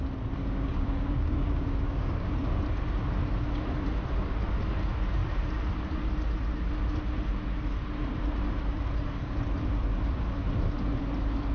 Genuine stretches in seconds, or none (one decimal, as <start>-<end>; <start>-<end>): 0.0-0.4; 2.3-11.5